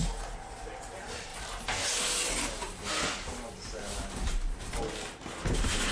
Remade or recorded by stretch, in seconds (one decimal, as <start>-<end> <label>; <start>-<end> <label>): 0.0-5.9 recorded